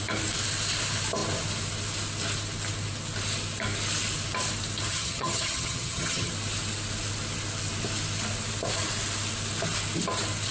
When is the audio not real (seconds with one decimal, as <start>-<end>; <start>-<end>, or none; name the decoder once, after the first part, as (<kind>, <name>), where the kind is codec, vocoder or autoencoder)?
4.9-6.3 (vocoder, HiFi-GAN)